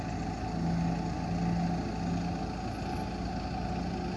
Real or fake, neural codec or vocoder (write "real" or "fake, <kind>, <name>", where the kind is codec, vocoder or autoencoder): real